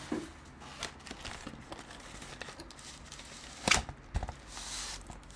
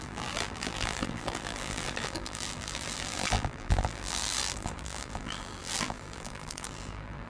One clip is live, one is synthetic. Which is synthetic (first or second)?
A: second